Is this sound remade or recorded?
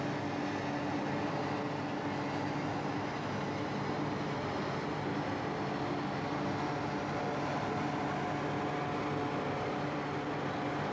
recorded